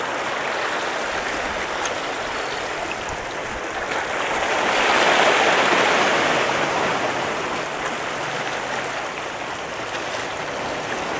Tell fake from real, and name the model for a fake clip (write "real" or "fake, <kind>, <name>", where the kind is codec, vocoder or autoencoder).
real